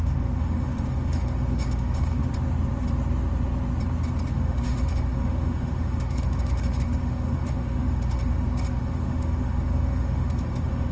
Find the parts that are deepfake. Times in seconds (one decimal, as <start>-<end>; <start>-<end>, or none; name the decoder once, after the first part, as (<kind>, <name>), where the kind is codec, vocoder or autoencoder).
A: 0.0-2.2 (autoencoder, DAC-VAE); 4.3-10.9